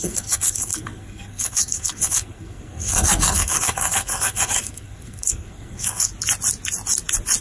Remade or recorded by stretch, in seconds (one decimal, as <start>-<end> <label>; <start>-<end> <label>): 0.0-6.1 remade; 6.1-7.4 recorded